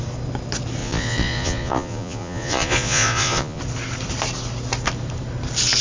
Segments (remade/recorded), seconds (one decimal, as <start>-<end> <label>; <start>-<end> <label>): 0.0-0.8 recorded; 0.8-3.6 remade; 3.6-5.8 recorded